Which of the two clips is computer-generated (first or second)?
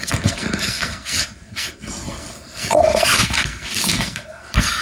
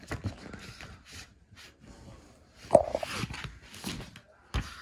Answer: first